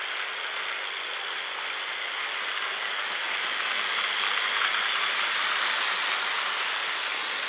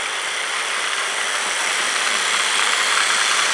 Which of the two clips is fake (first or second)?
second